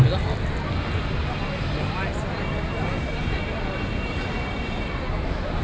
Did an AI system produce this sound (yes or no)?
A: no